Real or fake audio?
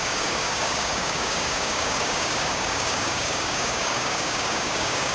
fake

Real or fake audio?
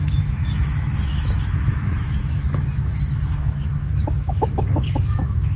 fake